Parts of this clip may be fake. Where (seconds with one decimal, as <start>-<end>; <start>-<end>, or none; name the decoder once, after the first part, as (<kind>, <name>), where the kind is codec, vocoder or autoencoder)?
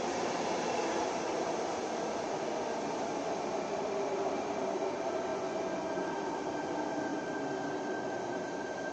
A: 5.3-6.1 (vocoder, Vocos)